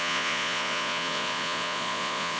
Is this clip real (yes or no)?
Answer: no